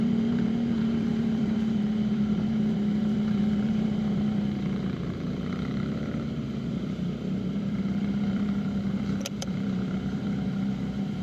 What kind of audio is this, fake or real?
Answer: fake